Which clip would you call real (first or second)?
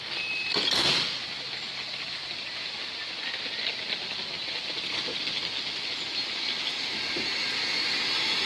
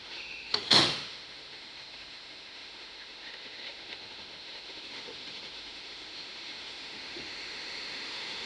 first